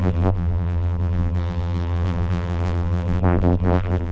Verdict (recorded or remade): remade